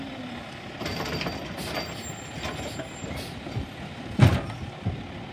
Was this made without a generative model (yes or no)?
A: yes